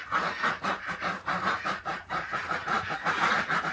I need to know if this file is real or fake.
fake